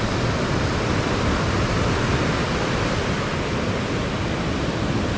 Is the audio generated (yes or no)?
no